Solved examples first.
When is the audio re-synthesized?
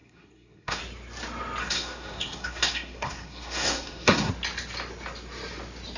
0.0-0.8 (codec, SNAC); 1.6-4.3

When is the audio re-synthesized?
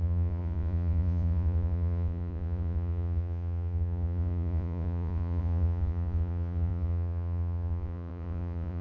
0.0-8.8 (vocoder, Vocos)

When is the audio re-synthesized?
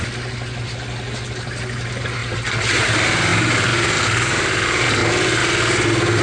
none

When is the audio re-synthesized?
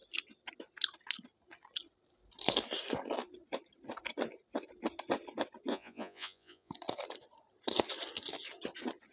5.7-6.7 (vocoder, Vocos)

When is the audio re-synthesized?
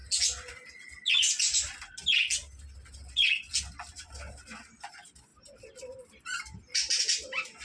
none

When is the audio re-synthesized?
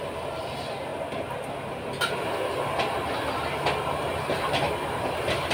none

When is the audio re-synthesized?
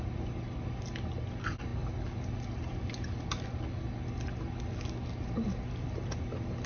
none